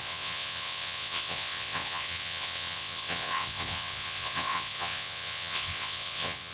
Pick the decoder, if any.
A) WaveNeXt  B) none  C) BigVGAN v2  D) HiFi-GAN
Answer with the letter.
A